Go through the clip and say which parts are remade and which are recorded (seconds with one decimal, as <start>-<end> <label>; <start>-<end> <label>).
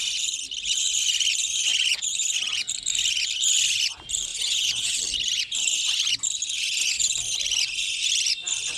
0.0-4.3 recorded; 4.3-5.0 remade; 5.0-8.8 recorded